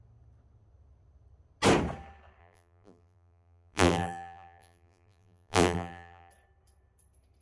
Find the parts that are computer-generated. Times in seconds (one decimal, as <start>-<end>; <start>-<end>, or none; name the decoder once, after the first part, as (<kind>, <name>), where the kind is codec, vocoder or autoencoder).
2.4-6.3 (vocoder, BigVGAN v2)